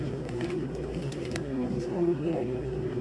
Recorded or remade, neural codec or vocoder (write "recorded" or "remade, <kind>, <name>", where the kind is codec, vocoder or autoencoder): remade, codec, SNAC